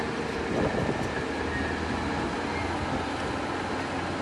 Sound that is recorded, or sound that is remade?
recorded